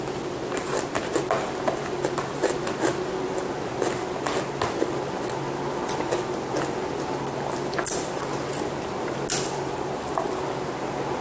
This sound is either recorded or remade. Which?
recorded